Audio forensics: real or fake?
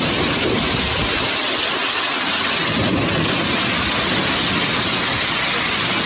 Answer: real